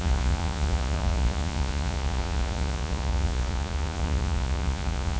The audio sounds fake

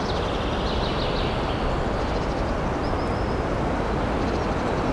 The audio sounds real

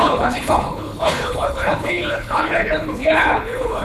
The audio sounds fake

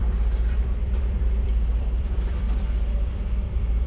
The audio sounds fake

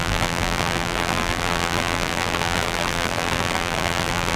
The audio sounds fake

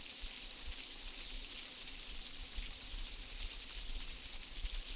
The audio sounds real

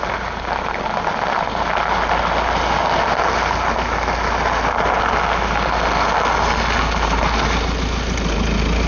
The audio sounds real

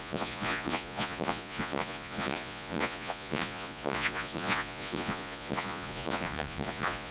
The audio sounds fake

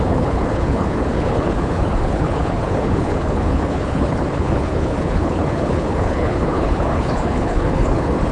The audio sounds fake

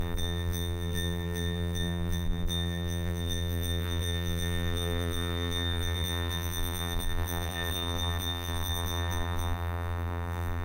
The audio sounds fake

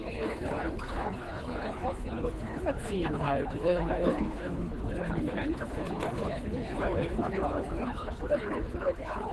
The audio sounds fake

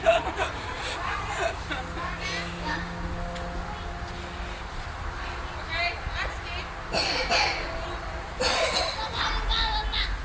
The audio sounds real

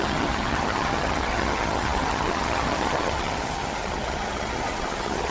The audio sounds fake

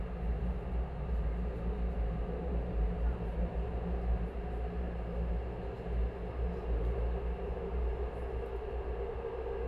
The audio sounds real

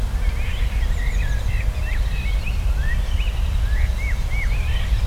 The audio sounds real